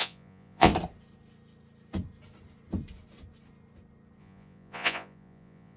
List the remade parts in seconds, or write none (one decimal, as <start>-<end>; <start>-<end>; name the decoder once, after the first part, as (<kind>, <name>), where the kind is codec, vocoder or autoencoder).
0.0-0.7 (vocoder, Vocos); 4.2-5.8